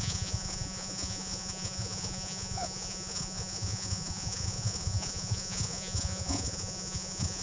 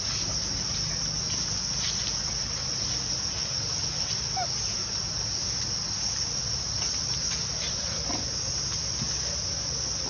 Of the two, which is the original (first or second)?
second